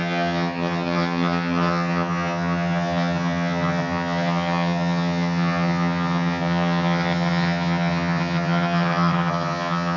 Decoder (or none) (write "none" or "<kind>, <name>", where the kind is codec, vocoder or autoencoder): vocoder, HiFi-GAN